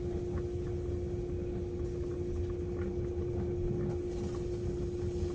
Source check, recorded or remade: recorded